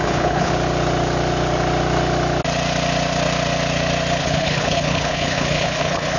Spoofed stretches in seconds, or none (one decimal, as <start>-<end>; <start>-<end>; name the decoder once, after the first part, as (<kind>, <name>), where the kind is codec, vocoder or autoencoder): 0.0-0.5 (codec, HILCodec); 4.2-6.2